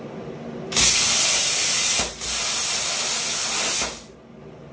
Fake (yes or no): no